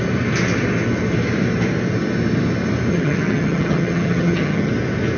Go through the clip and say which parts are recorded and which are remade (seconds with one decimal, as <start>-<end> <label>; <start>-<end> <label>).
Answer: 0.0-2.9 recorded; 2.9-4.7 remade; 4.7-5.2 recorded